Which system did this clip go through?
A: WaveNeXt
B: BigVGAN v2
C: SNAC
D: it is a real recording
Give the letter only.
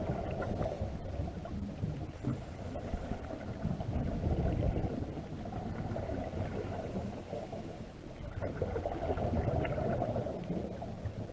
D